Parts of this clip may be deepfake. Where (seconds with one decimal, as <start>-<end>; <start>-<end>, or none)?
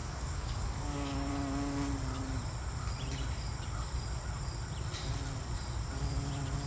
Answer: 0.0-1.3